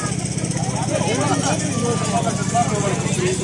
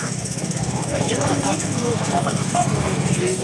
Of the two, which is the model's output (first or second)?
second